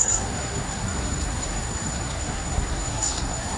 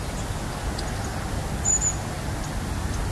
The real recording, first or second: second